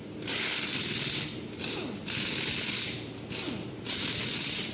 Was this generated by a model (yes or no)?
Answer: no